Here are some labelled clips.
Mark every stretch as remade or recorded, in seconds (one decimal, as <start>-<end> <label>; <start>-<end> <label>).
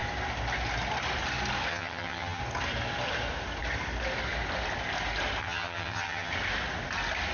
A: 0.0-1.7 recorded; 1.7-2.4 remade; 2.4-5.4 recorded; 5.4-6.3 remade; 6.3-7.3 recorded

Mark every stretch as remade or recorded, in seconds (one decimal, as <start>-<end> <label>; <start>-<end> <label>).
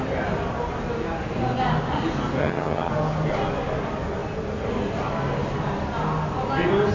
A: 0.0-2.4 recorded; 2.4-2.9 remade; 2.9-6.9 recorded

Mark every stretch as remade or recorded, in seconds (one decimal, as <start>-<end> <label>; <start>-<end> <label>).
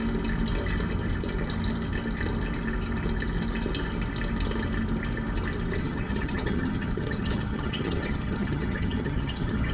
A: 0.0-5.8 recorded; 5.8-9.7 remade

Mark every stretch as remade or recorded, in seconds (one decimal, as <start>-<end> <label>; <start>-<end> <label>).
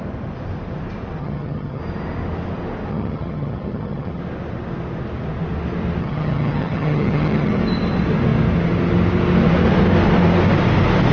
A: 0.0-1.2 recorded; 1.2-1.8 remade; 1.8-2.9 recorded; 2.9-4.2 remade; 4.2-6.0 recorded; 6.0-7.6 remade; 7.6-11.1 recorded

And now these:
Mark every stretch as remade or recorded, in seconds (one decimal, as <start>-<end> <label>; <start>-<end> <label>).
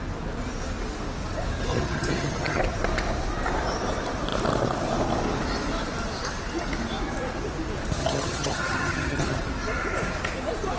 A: 0.0-1.7 recorded; 1.7-2.6 remade; 2.6-8.0 recorded; 8.0-9.4 remade; 9.4-10.8 recorded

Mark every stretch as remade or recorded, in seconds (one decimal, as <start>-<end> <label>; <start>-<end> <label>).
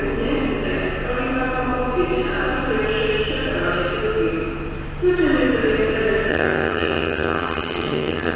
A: 0.0-6.3 recorded; 6.3-8.4 remade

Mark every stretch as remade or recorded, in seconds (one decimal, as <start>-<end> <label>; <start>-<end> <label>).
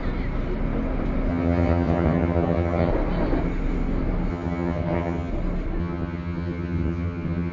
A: 0.0-1.3 recorded; 1.3-2.9 remade; 2.9-4.3 recorded; 4.3-5.3 remade; 5.3-5.8 recorded; 5.8-7.5 remade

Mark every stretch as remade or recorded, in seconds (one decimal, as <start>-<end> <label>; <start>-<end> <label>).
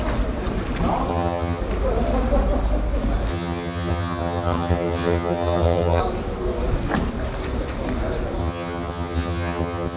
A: 0.0-1.1 recorded; 1.1-1.6 remade; 1.6-3.3 recorded; 3.3-6.0 remade; 6.0-8.4 recorded; 8.4-10.0 remade